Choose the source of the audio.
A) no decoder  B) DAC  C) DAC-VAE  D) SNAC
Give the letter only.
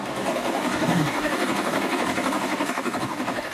B